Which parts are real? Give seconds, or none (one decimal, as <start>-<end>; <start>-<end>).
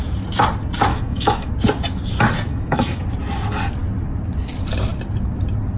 0.0-0.9; 1.5-2.5; 3.0-5.8